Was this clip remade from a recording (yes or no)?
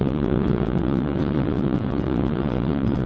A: yes